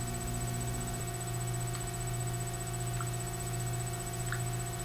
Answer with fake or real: real